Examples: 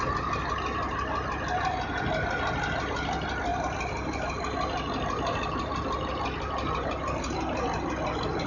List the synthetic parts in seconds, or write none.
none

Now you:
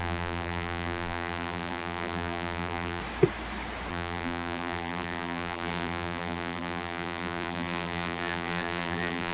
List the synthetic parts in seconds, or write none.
0.0-3.0 (vocoder, BigVGAN v2); 3.9-9.3

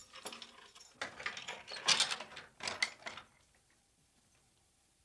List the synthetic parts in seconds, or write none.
none

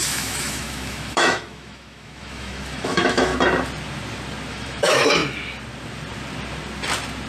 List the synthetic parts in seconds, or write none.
0.0-3.3 (autoencoder, DAC-VAE); 4.5-5.2

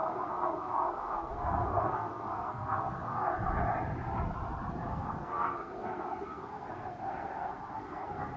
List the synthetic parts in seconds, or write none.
0.0-3.3 (codec, SNAC); 4.9-8.4

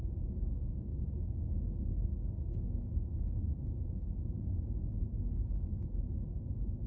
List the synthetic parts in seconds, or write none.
0.0-5.7 (codec, DAC)